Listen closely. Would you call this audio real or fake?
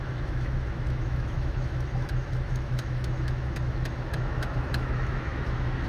fake